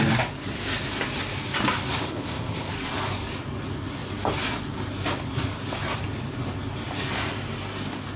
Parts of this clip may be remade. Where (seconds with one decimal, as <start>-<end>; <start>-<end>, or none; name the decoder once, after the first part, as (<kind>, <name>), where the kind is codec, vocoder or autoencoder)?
2.0-2.7 (codec, ZipCodec)